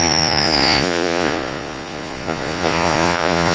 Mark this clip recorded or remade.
remade